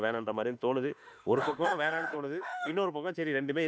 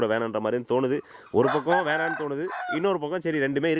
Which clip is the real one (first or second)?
second